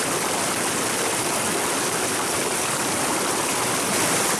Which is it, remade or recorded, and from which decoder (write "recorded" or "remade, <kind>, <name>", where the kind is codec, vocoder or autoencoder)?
recorded